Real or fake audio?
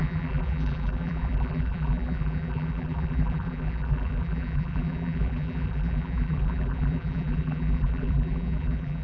fake